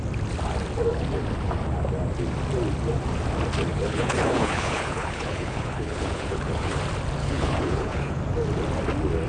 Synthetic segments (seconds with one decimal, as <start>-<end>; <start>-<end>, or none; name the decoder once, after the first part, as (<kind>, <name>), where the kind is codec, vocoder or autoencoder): 3.7-6.8 (codec, HILCodec); 7.2-8.2